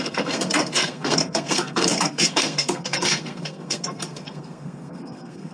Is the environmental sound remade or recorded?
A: remade